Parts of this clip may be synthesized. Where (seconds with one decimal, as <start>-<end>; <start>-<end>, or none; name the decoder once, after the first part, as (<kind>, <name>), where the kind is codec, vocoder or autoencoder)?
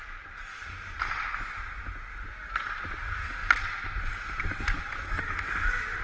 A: none